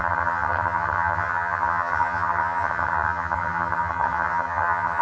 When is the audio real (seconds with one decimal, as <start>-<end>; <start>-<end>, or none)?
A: none

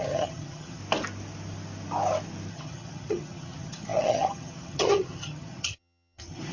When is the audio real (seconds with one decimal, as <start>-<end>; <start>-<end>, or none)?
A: 0.8-2.5

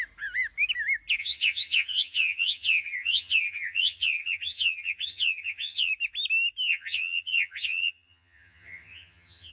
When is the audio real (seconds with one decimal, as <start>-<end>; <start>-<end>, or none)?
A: 0.0-1.2; 5.9-6.7

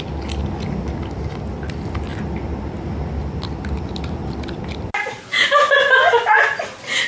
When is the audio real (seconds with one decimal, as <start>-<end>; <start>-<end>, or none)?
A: 0.0-7.1

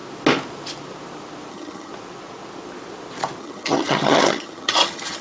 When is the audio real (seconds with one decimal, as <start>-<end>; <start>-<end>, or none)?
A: 0.0-1.5; 1.9-3.4